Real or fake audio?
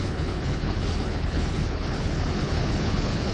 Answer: fake